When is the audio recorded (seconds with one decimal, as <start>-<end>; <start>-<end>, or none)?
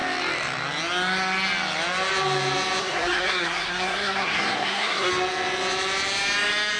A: 0.0-2.8; 5.1-6.8